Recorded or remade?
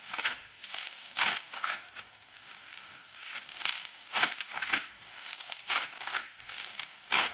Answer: remade